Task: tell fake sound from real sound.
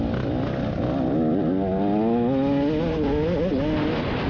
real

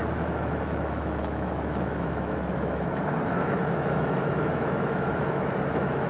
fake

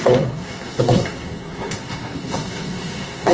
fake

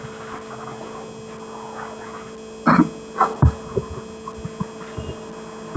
real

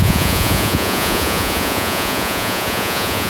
fake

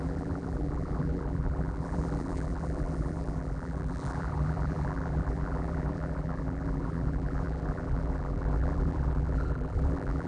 fake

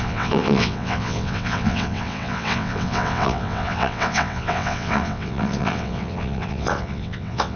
fake